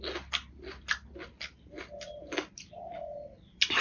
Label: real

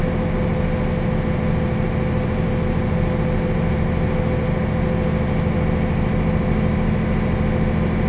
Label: real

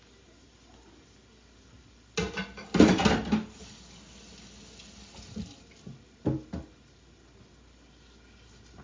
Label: real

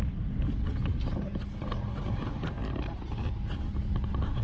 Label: real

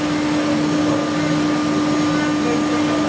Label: real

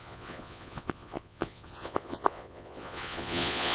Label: fake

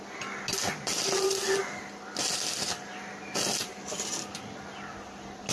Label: real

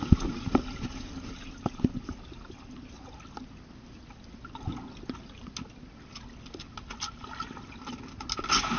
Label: real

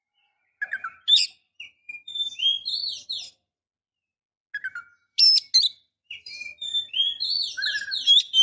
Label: real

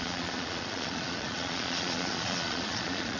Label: fake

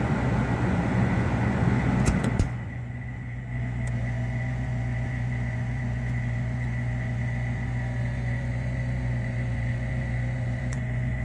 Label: fake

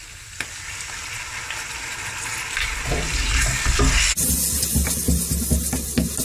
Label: real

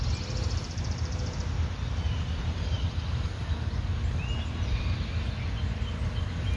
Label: real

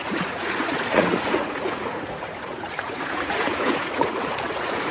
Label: fake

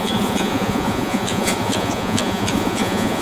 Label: fake